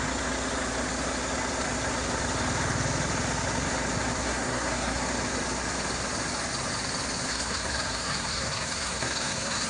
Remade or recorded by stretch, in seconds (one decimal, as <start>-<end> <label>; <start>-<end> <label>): 0.0-4.2 recorded; 4.2-5.1 remade; 5.1-7.3 recorded; 7.3-9.7 remade